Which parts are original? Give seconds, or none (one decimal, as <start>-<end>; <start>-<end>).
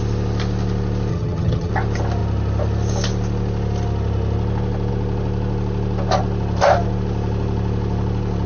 0.0-1.1; 1.7-8.5